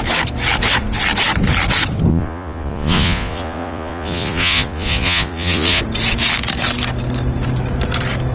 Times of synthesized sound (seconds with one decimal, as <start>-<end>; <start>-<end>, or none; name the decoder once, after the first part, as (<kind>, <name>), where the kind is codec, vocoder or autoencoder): 2.1-5.8 (vocoder, Vocos)